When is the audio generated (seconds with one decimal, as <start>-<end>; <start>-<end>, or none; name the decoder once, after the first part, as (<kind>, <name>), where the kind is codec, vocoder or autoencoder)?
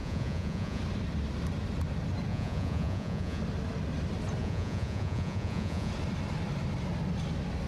0.0-0.8 (vocoder, Vocos); 2.3-3.4; 4.4-5.9